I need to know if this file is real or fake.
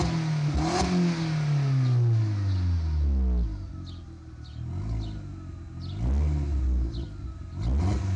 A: real